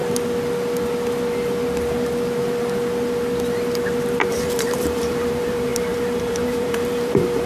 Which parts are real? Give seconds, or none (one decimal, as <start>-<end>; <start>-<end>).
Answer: 0.0-4.3